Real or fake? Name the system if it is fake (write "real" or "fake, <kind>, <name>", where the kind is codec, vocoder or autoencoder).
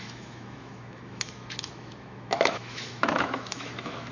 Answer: fake, autoencoder, DAC-VAE